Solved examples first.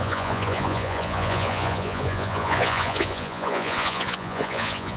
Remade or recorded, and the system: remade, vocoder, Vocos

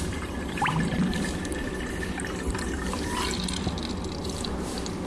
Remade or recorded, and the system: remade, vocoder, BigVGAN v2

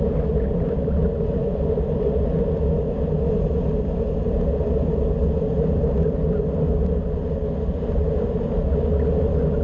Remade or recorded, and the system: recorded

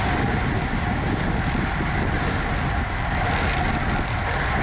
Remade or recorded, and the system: recorded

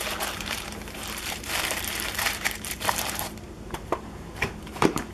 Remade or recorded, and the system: remade, vocoder, BigVGAN v2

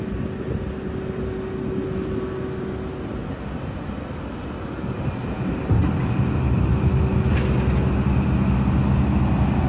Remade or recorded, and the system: recorded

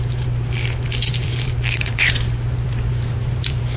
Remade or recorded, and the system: remade, vocoder, BigVGAN v2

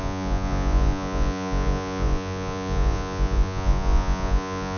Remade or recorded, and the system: remade, vocoder, Vocos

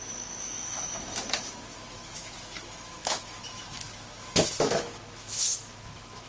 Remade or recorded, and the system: remade, autoencoder, DAC-VAE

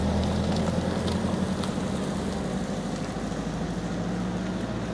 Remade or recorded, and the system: recorded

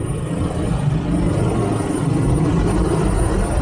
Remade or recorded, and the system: recorded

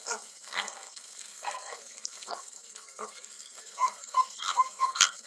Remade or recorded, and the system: remade, codec, SNAC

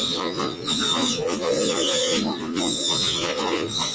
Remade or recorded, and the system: remade, vocoder, Vocos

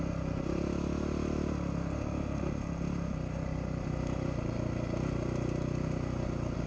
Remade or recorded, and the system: recorded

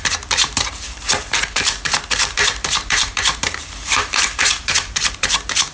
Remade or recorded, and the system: remade, vocoder, BigVGAN v2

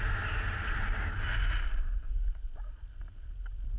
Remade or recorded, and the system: recorded